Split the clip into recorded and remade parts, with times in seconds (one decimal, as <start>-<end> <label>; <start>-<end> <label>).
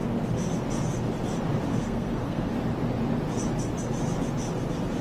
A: 0.0-1.7 recorded; 1.7-2.5 remade; 2.5-5.0 recorded